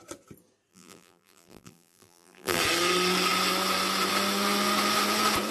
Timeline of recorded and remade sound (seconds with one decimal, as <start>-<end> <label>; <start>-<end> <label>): 0.0-0.7 recorded; 0.7-2.6 remade; 2.6-5.5 recorded